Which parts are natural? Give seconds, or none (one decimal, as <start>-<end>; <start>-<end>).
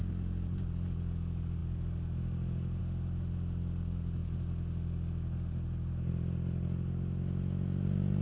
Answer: 0.0-8.2